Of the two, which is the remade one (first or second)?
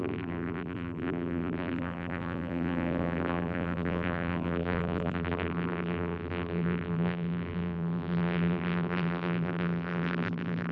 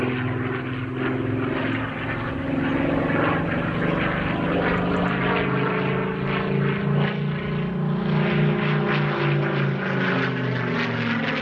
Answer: first